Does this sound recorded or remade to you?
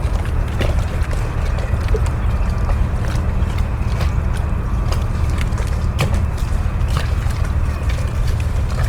recorded